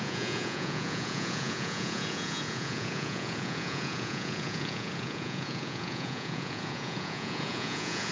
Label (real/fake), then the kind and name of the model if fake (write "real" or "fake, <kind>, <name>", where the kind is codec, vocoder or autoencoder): fake, vocoder, Vocos